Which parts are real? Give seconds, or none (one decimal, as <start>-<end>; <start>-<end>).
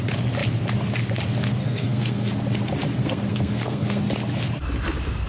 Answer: 0.0-1.6; 2.3-3.0; 4.0-5.3